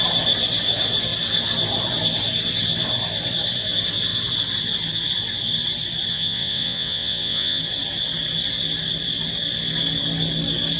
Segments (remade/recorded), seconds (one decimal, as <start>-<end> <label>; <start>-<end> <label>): 0.0-6.1 recorded; 6.1-7.6 remade; 7.6-10.8 recorded